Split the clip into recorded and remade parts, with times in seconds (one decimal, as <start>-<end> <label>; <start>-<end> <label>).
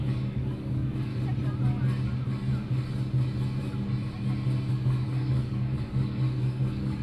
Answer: 0.0-1.1 remade; 1.1-4.7 recorded; 4.7-7.0 remade